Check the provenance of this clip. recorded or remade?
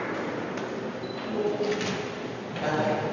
recorded